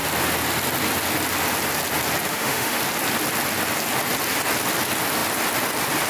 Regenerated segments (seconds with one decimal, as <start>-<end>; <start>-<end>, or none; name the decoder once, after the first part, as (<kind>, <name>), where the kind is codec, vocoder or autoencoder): 2.3-2.8 (autoencoder, DAC-VAE)